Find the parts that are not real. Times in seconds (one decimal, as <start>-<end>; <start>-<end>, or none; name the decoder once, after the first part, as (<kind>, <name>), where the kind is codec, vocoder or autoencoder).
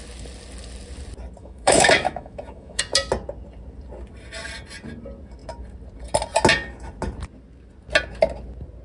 1.4-2.8 (autoencoder, DAC-VAE)